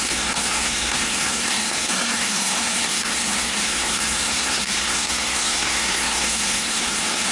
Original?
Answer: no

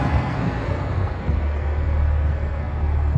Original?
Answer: no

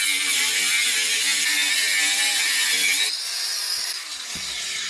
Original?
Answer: yes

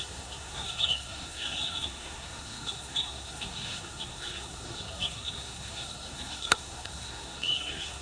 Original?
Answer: no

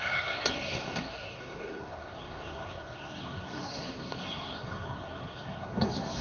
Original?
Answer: no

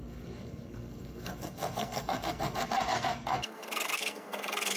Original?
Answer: no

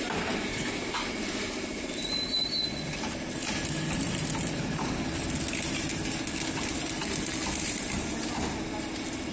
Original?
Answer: yes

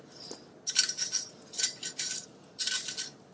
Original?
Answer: yes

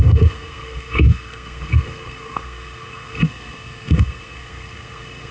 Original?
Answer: no